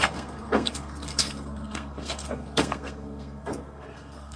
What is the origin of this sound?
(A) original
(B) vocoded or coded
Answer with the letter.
B